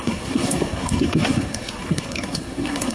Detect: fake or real fake